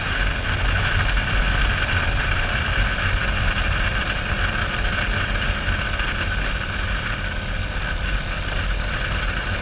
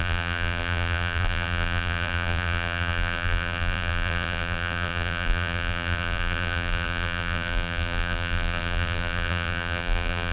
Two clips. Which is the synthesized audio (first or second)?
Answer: second